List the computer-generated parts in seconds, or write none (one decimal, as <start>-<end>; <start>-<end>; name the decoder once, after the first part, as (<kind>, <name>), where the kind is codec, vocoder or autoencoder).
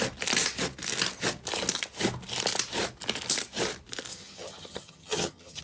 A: 4.1-5.6 (vocoder, HiFi-GAN)